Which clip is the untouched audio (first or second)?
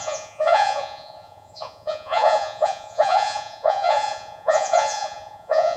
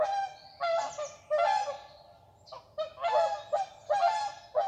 second